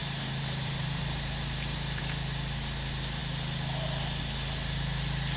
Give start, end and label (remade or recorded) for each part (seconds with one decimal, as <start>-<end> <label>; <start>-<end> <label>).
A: 0.0-2.0 remade; 2.0-5.4 recorded